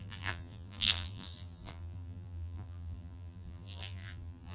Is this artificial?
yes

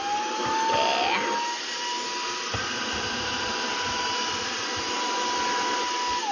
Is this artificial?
no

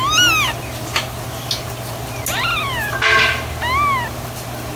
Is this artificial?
no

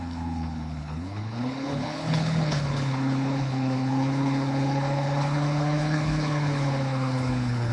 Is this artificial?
yes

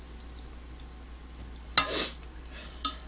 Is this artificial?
no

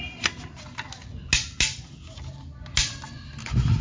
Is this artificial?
no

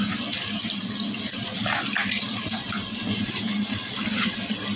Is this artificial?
no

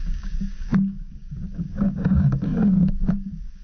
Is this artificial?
yes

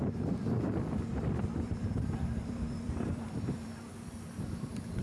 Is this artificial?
yes